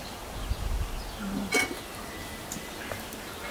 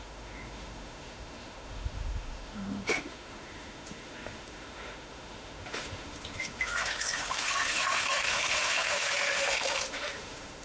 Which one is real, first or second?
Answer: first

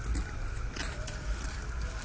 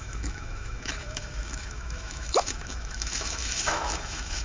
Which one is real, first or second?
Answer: first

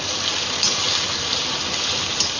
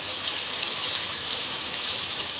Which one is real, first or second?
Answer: first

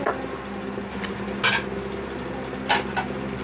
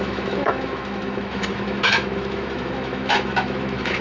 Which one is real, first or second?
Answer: first